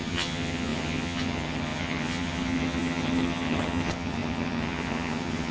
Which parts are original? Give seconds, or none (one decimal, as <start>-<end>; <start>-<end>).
none

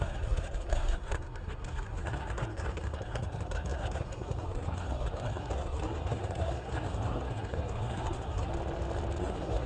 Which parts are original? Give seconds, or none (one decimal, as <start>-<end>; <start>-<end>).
8.5-9.2

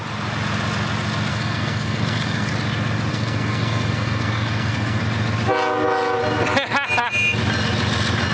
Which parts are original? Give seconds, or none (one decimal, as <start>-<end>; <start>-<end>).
0.0-1.3; 2.5-3.1; 5.0-8.3

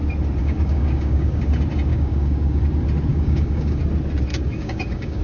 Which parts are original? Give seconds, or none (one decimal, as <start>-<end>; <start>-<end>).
0.0-0.4; 1.4-1.9; 2.6-3.1; 3.8-4.3

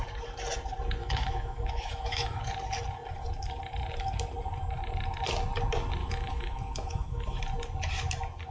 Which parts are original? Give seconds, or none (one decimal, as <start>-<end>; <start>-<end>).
0.0-1.0; 2.4-6.0; 7.4-8.5

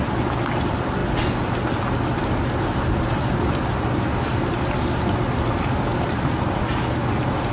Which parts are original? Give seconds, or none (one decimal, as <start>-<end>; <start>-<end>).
0.0-7.5